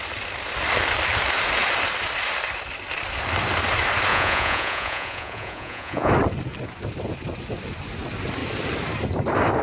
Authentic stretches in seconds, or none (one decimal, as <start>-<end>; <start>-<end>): 0.0-4.1; 6.1-9.6